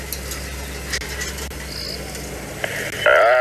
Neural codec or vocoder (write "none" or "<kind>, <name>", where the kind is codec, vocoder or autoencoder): none